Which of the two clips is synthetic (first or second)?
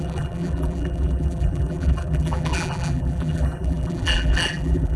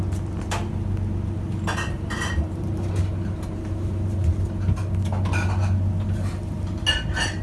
first